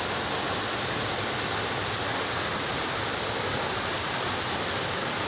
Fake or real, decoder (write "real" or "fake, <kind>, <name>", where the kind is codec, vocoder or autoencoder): real